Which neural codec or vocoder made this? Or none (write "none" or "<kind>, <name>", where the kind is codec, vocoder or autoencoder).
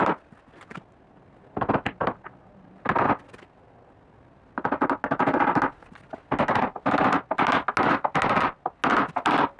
none